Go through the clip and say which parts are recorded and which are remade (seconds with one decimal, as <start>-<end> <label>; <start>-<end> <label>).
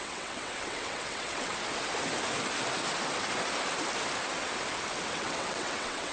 0.0-1.5 remade; 1.5-5.1 recorded; 5.1-6.1 remade